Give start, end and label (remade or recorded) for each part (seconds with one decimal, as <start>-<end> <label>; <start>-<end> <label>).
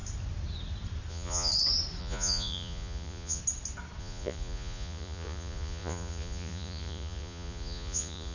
0.0-1.1 recorded; 1.1-1.5 remade; 1.5-2.0 recorded; 2.0-3.4 remade; 3.4-4.0 recorded; 4.0-8.3 remade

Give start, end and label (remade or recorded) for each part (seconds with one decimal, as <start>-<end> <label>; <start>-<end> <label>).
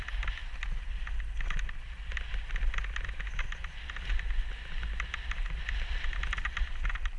0.0-7.2 recorded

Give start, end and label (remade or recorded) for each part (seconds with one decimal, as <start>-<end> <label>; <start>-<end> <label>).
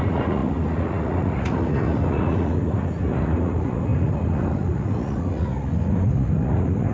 0.0-6.9 remade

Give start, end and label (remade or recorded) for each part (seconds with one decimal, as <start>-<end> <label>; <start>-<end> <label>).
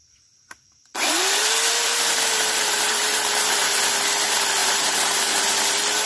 0.0-3.7 remade; 3.7-4.6 recorded; 4.6-5.5 remade; 5.5-6.1 recorded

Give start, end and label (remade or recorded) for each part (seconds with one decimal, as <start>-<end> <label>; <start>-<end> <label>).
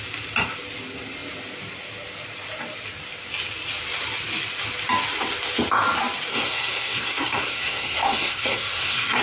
0.0-6.3 recorded; 6.3-9.2 remade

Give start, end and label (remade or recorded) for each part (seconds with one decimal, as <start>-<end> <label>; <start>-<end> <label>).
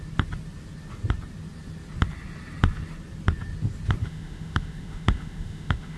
0.0-4.0 recorded; 4.0-6.0 remade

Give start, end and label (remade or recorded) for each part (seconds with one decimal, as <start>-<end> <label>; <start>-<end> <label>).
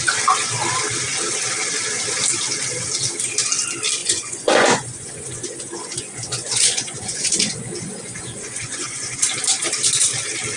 0.0-4.0 recorded; 4.0-9.2 remade; 9.2-10.6 recorded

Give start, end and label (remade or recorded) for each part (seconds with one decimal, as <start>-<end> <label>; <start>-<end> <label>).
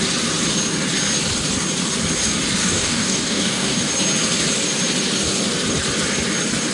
0.0-2.6 recorded; 2.6-3.9 remade; 3.9-6.7 recorded